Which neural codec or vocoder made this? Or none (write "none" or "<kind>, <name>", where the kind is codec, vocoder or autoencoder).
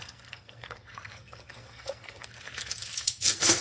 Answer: codec, SNAC